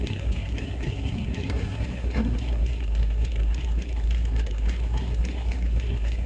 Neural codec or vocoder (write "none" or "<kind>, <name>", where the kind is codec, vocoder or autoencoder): codec, SNAC